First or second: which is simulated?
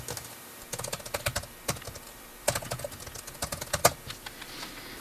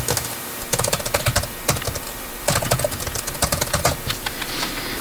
second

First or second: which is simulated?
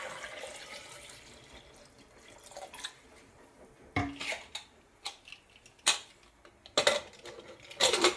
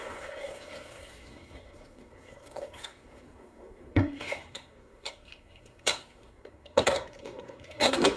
second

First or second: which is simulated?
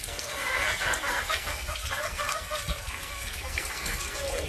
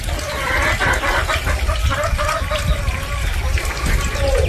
first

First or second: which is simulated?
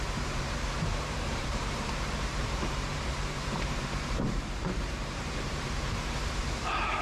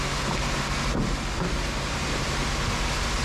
first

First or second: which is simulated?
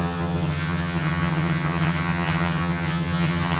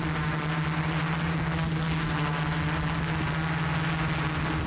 first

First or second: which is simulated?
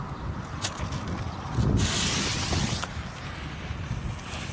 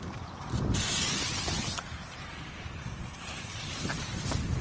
second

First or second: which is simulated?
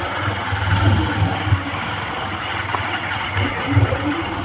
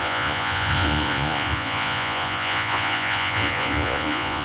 second